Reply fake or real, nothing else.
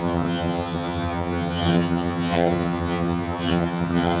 fake